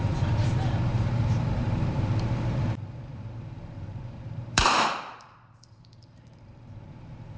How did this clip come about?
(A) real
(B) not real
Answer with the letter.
B